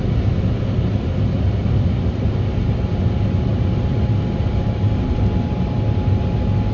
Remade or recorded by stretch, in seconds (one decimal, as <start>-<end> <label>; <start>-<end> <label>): 0.0-6.7 recorded